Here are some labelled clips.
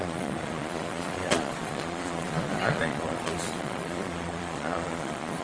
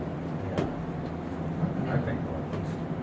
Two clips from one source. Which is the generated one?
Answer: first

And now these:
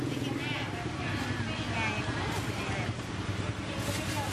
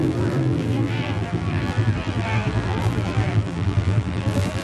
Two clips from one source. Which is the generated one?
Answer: second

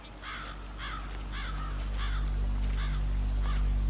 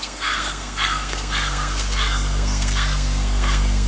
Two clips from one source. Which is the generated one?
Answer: second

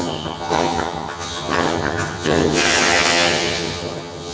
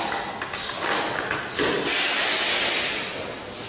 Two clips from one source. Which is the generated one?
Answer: first